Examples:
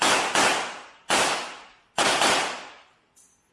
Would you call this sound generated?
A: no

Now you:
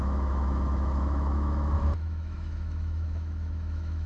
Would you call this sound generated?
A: yes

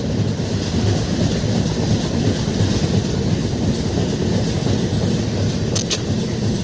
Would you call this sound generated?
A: no